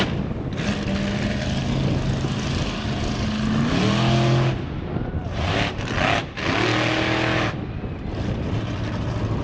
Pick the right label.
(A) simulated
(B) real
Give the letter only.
B